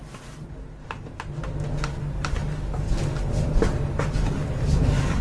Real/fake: real